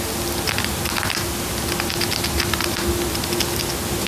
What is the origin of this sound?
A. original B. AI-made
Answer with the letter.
A